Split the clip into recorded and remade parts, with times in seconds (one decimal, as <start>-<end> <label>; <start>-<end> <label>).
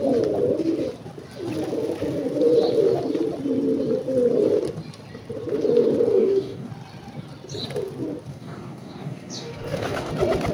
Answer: 0.0-6.1 recorded; 6.1-6.7 remade; 6.7-8.3 recorded; 8.3-10.1 remade; 10.1-10.5 recorded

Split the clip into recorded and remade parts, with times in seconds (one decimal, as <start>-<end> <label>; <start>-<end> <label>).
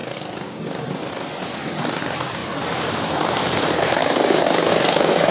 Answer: 0.0-0.6 remade; 0.6-4.0 recorded; 4.0-5.3 remade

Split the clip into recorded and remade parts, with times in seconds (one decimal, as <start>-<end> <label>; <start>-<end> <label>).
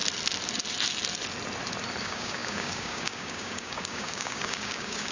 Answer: 0.0-2.0 recorded; 2.0-5.1 remade